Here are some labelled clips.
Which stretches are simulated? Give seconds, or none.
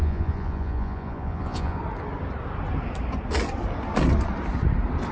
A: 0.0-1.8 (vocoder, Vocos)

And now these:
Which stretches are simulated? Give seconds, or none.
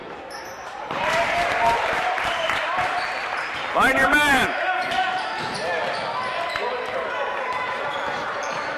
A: 0.0-5.8 (vocoder, BigVGAN v2); 7.8-8.8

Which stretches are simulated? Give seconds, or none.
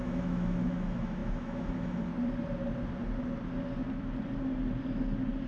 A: 0.0-2.1 (autoencoder, DAC-VAE)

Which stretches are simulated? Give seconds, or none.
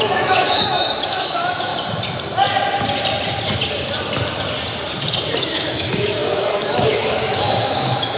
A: 0.0-1.7 (autoencoder, DAC-VAE); 5.4-8.2